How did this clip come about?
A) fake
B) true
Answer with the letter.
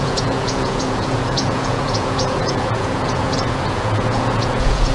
A